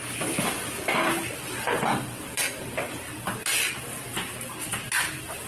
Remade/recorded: recorded